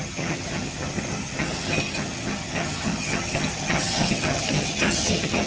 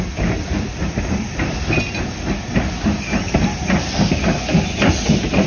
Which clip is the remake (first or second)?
first